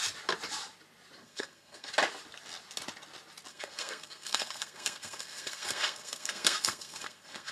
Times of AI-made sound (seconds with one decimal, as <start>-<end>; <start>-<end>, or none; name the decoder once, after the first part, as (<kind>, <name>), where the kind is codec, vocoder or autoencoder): 1.2-1.9 (codec, SNAC); 3.5-7.5